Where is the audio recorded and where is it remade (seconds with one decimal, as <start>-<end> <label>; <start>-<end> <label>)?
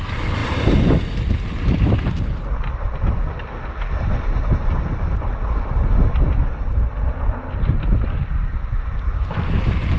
0.0-10.0 recorded